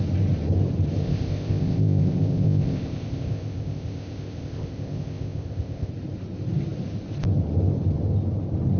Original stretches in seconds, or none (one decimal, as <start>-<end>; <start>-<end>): 0.0-1.0; 5.9-8.8